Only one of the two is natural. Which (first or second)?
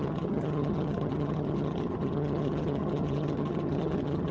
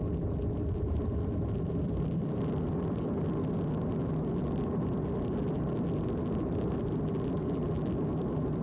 second